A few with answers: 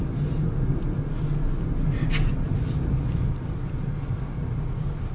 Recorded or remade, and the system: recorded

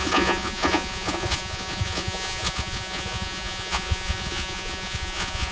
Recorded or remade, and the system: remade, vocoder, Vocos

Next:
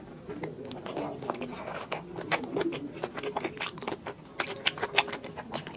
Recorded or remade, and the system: recorded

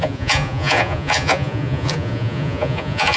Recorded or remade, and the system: remade, vocoder, Vocos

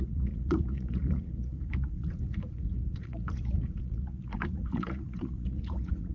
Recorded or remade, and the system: remade, vocoder, Vocos